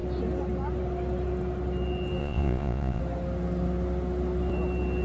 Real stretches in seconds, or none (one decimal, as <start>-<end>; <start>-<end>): 0.0-2.2; 3.0-5.0